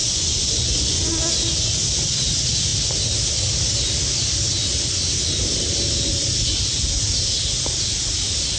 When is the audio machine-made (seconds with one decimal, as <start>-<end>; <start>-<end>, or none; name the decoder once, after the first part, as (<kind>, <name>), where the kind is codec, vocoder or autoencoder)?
0.0-1.1 (vocoder, Vocos)